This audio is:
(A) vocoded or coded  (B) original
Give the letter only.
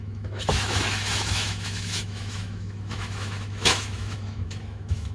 A